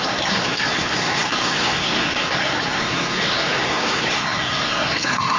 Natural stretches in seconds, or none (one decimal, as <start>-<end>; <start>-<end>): none